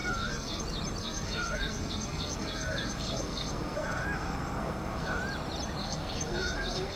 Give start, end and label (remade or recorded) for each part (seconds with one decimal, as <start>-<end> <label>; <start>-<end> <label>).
0.0-0.6 remade; 0.6-1.0 recorded; 1.0-5.2 remade; 5.2-5.8 recorded; 5.8-7.0 remade